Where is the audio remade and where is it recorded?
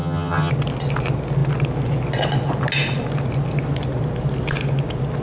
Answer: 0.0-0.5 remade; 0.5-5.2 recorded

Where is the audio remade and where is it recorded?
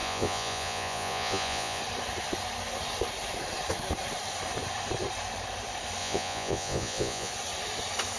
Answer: 0.0-1.8 remade; 1.8-6.0 recorded; 6.0-7.3 remade; 7.3-8.2 recorded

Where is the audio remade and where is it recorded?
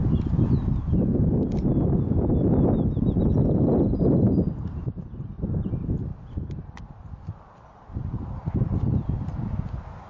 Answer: 0.0-10.1 recorded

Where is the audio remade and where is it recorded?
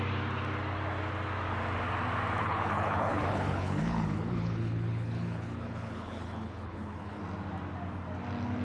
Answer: 0.0-2.4 recorded; 2.4-7.2 remade; 7.2-8.6 recorded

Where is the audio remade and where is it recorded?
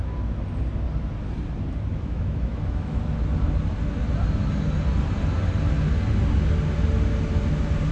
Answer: 0.0-1.9 recorded; 1.9-3.0 remade; 3.0-7.9 recorded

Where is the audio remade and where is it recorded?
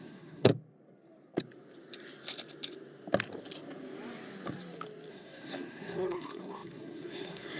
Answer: 0.0-0.5 remade; 0.5-5.1 recorded; 5.1-7.6 remade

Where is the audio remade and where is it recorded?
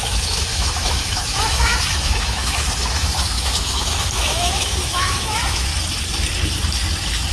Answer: 0.0-5.7 remade; 5.7-7.3 recorded